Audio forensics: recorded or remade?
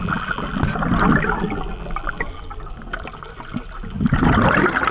recorded